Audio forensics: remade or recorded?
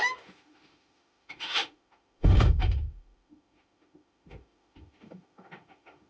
remade